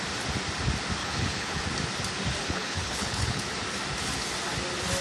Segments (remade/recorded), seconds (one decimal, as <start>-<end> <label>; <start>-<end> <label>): 0.0-1.0 recorded; 1.0-1.6 remade; 1.6-2.4 recorded; 2.4-3.4 remade; 3.4-5.0 recorded